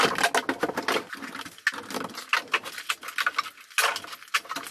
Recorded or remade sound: recorded